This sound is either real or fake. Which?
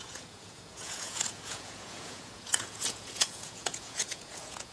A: fake